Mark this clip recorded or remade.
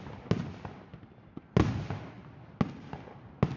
recorded